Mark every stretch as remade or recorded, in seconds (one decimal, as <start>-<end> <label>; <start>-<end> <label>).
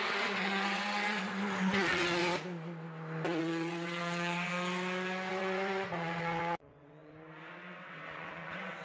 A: 0.0-2.2 remade; 2.2-3.4 recorded; 3.4-4.5 remade; 4.5-5.3 recorded; 5.3-8.8 remade